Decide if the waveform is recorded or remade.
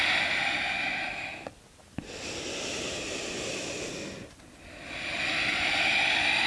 recorded